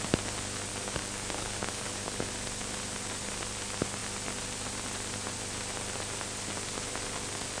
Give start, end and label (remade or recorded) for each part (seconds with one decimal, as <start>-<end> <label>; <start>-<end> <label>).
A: 0.0-0.7 recorded; 0.7-2.3 remade; 2.3-7.6 recorded